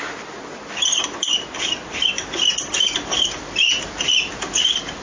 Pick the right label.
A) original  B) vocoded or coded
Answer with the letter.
A